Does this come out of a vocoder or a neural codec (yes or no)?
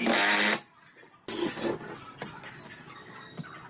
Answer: no